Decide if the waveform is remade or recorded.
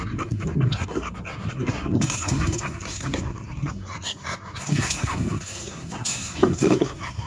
remade